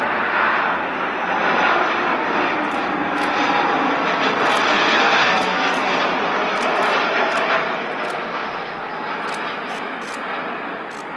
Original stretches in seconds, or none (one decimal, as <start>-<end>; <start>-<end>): 0.0-4.7; 5.9-11.2